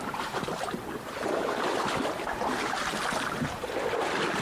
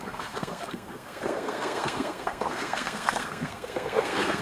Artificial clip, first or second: second